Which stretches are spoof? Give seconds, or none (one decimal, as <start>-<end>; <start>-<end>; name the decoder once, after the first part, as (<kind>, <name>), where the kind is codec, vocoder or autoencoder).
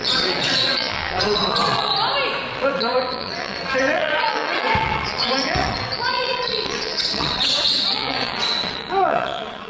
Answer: 0.0-1.9 (vocoder, WaveNeXt); 2.5-9.7